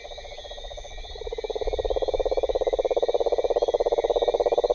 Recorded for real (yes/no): yes